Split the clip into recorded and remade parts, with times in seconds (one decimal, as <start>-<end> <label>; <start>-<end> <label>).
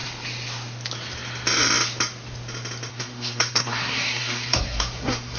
0.0-2.9 recorded; 2.9-5.4 remade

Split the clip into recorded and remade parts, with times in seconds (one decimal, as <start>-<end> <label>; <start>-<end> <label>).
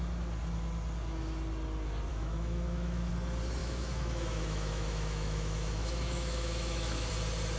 0.0-2.1 recorded; 2.1-3.1 remade; 3.1-3.6 recorded; 3.6-7.1 remade; 7.1-7.6 recorded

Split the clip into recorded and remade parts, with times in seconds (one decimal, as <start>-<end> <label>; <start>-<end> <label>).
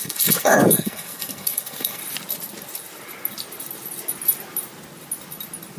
0.0-2.0 remade; 2.0-5.8 recorded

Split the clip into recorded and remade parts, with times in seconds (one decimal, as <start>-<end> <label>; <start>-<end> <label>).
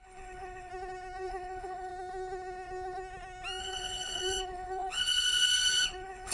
0.0-0.7 remade; 0.7-1.3 recorded; 1.3-1.9 remade; 1.9-3.6 recorded; 3.6-6.3 remade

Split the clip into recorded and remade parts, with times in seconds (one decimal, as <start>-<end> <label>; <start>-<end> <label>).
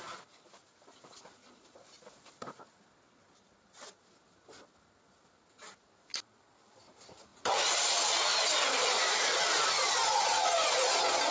0.0-11.3 recorded